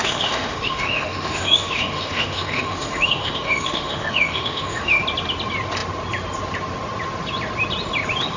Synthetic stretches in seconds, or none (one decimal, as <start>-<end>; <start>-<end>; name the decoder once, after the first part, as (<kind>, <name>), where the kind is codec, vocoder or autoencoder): 0.0-5.0 (autoencoder, DAC-VAE)